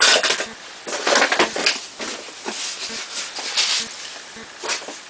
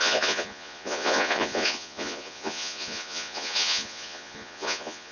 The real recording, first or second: first